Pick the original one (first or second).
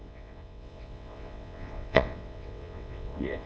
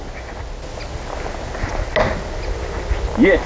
second